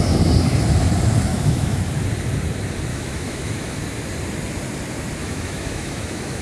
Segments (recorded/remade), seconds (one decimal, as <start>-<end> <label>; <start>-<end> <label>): 0.0-1.3 recorded; 1.3-1.8 remade; 1.8-2.9 recorded; 2.9-3.8 remade; 3.8-5.2 recorded; 5.2-6.4 remade